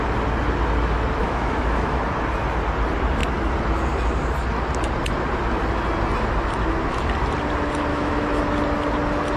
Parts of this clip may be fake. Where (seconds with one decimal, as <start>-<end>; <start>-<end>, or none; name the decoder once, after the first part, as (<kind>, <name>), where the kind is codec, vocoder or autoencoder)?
1.2-2.0 (autoencoder, DAC-VAE); 7.9-8.4